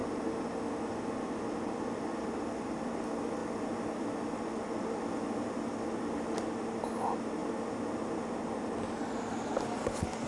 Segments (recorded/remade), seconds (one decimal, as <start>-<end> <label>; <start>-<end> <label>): 0.0-10.3 recorded